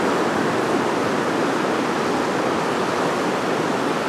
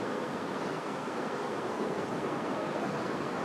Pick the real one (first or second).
first